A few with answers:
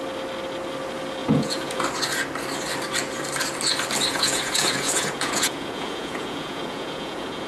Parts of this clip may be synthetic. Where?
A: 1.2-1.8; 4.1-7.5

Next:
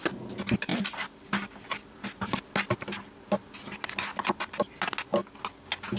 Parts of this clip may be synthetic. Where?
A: none

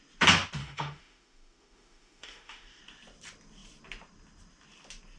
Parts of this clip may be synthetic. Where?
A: 0.6-2.8